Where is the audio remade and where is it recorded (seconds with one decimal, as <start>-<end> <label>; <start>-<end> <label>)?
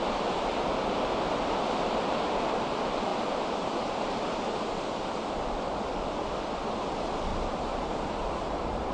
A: 0.0-0.9 remade; 0.9-3.1 recorded; 3.1-4.1 remade; 4.1-7.3 recorded; 7.3-8.9 remade